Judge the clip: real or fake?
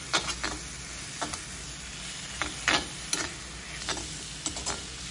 real